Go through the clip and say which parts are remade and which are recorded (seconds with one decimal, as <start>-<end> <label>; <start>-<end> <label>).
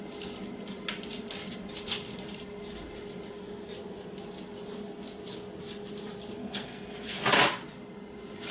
0.0-6.4 recorded; 6.4-7.2 remade; 7.2-8.5 recorded